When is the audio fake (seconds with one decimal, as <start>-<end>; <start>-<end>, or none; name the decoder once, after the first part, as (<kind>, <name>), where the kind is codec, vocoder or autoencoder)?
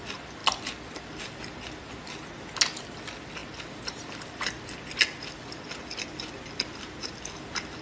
none